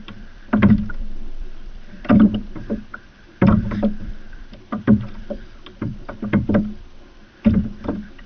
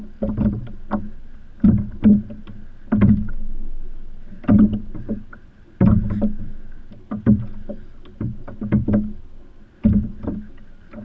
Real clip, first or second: second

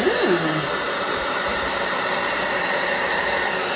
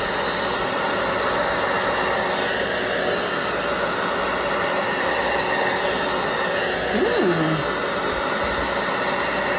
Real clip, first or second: second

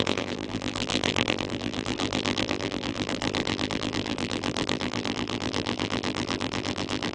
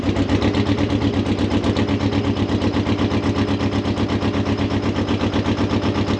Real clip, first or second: second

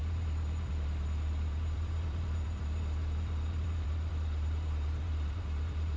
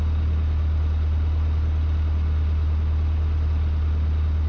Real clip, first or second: second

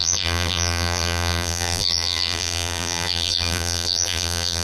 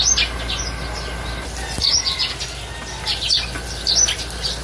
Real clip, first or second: second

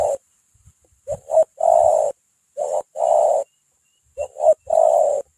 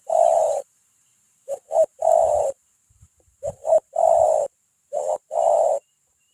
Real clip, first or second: first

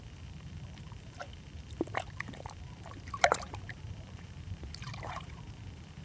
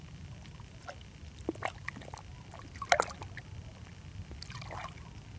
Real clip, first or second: second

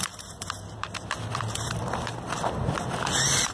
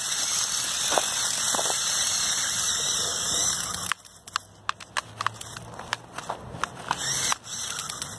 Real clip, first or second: second